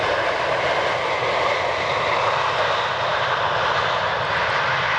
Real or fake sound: real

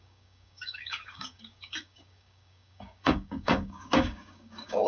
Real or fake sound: fake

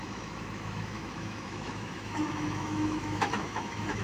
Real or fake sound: fake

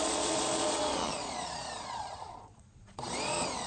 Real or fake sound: fake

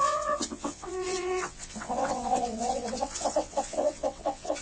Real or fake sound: fake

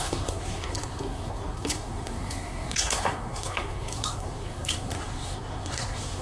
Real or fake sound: fake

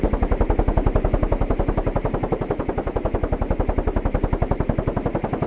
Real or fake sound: real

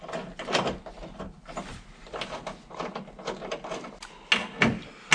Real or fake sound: real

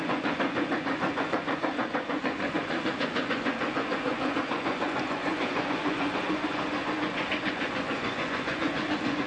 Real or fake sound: fake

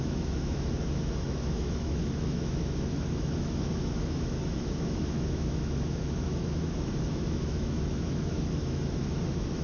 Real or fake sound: fake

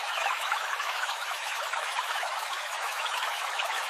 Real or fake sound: fake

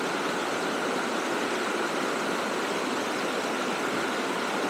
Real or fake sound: real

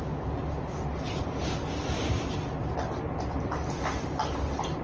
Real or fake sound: real